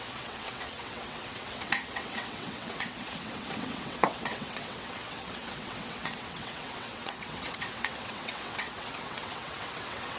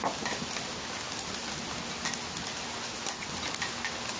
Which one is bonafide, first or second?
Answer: second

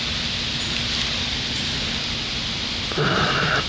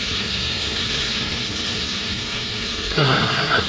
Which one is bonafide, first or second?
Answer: first